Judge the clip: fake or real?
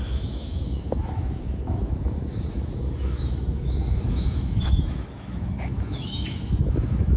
fake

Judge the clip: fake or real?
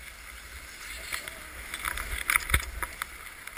real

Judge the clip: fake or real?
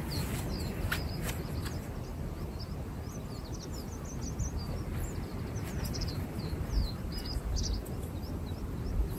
real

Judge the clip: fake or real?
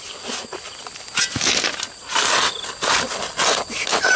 real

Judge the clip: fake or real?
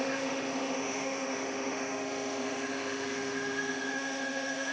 fake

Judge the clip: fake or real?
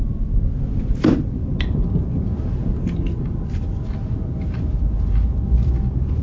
real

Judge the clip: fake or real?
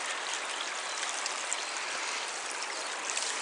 real